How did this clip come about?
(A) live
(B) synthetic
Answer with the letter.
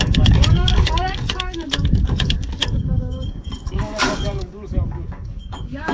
B